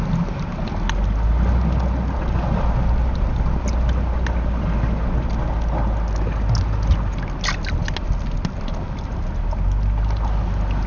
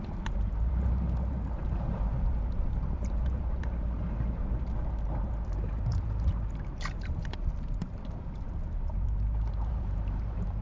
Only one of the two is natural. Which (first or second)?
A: first